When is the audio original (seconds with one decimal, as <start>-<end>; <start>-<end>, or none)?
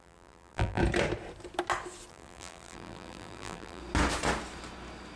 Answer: 0.8-2.1; 3.8-5.2